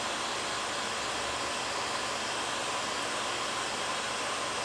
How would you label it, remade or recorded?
recorded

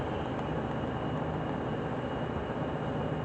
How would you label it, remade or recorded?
recorded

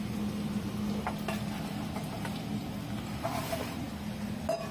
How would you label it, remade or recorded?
recorded